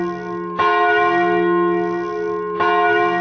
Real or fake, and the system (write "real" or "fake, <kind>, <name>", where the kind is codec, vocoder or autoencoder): real